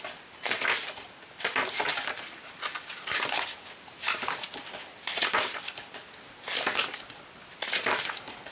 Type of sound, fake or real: real